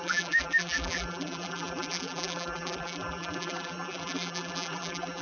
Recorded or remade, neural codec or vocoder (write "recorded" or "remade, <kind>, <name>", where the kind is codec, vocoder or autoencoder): remade, vocoder, BigVGAN v2